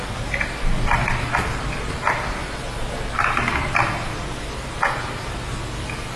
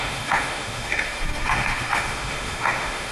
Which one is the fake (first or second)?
second